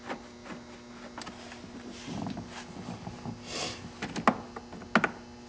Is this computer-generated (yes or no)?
no